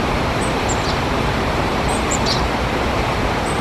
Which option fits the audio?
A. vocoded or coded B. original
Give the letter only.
A